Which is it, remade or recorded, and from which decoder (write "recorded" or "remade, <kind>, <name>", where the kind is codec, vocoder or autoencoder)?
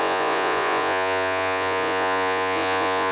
remade, vocoder, Vocos